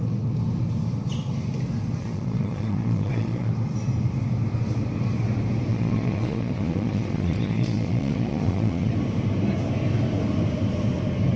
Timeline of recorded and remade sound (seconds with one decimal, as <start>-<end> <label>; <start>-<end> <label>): 0.0-2.0 recorded; 2.0-3.5 remade; 3.5-5.7 recorded; 5.7-8.9 remade; 8.9-11.4 recorded